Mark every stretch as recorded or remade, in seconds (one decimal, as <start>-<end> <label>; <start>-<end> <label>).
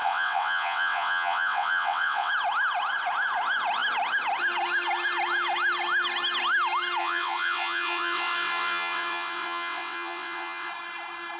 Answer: 0.0-2.3 remade; 2.3-7.0 recorded; 7.0-10.7 remade; 10.7-11.4 recorded